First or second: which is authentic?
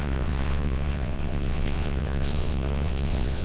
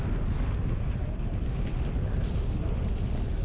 second